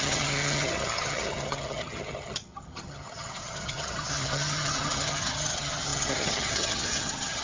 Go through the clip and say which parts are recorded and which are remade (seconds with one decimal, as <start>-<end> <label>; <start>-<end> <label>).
0.0-7.4 remade